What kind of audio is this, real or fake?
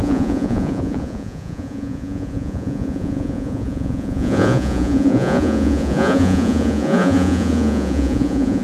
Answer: fake